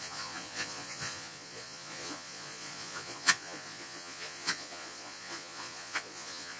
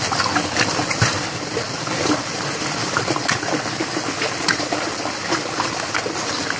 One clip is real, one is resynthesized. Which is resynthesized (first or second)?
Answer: first